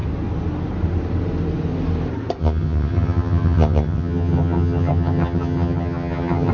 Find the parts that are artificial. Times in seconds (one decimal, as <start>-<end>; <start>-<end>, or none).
2.4-6.5